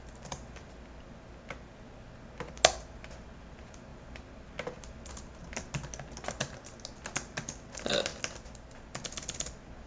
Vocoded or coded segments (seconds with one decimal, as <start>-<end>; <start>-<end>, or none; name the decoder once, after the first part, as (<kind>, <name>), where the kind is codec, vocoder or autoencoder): none